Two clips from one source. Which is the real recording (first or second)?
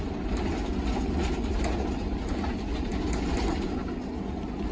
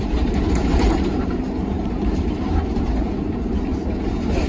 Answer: first